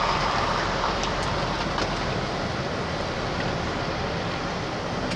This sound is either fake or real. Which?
fake